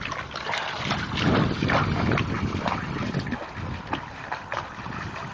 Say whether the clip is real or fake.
real